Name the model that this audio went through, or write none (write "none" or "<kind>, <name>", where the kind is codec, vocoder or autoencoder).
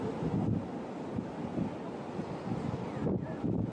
none